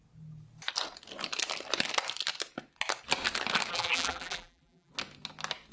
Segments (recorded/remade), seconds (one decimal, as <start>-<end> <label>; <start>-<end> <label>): 0.0-3.7 recorded; 3.7-4.9 remade; 4.9-5.7 recorded

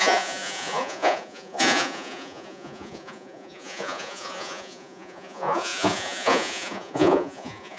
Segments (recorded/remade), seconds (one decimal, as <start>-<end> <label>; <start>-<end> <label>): 0.0-7.8 remade